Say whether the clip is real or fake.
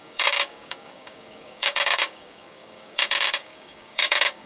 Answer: fake